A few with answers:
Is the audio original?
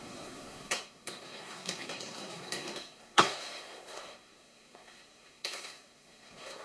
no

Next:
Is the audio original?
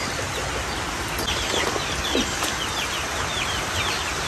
yes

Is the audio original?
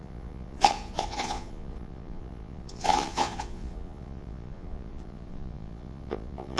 no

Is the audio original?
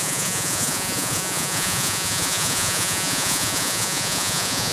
no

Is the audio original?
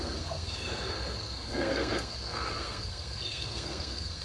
no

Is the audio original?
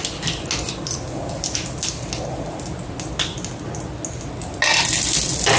yes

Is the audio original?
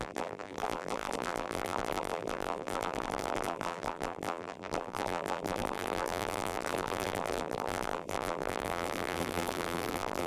no